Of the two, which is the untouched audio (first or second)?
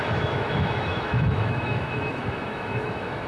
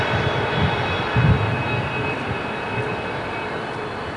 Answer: second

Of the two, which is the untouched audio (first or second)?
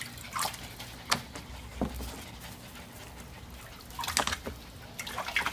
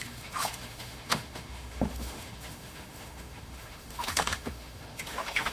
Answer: first